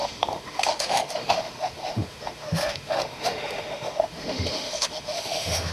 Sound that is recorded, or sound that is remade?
remade